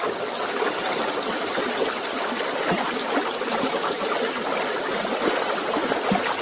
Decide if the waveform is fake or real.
real